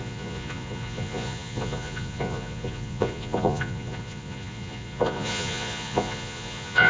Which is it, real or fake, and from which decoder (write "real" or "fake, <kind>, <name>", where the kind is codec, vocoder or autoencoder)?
fake, vocoder, Vocos